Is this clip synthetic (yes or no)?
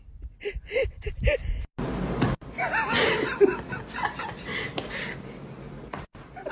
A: no